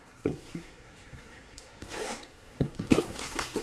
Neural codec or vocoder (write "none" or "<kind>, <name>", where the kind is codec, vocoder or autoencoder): codec, SNAC